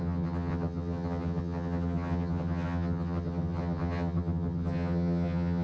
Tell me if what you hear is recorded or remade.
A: remade